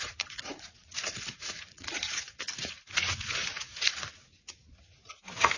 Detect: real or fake fake